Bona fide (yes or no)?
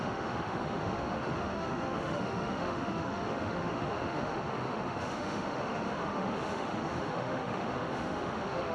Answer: no